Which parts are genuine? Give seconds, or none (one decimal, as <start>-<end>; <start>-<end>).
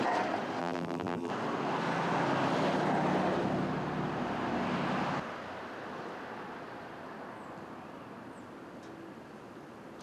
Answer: 0.0-0.6; 1.3-10.0